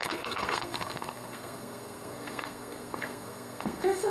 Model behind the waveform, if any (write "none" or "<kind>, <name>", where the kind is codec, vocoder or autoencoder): codec, SNAC